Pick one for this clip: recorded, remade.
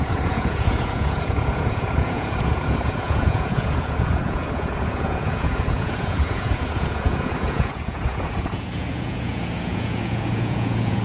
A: remade